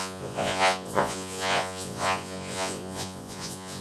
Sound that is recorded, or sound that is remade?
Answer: remade